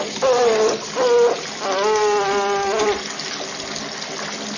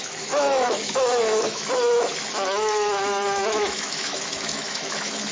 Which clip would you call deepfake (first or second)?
second